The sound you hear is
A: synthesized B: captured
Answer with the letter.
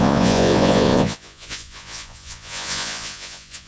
A